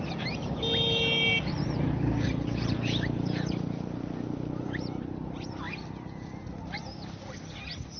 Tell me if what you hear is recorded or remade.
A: recorded